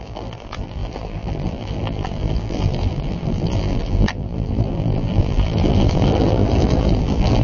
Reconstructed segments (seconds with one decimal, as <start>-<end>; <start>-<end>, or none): 0.0-7.4